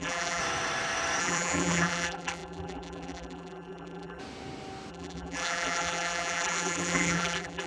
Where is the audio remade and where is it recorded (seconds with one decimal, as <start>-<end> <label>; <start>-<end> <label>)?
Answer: 0.0-0.4 remade; 0.4-1.2 recorded; 1.2-4.2 remade; 4.2-4.9 recorded; 4.9-7.7 remade

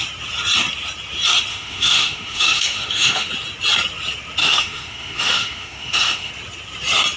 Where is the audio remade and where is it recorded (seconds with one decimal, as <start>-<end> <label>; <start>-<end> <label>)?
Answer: 0.0-1.5 recorded; 1.5-3.3 remade; 3.3-4.4 recorded; 4.4-6.3 remade; 6.3-7.2 recorded

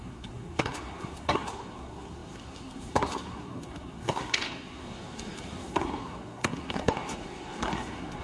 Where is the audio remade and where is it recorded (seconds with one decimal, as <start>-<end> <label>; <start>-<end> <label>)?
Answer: 0.0-8.2 remade

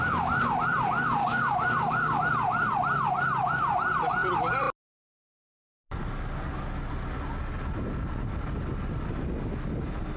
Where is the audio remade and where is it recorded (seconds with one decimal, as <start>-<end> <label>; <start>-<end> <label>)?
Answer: 0.0-1.2 recorded; 1.2-2.2 remade; 2.2-10.2 recorded